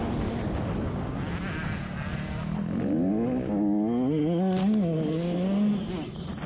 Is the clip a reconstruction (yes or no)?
no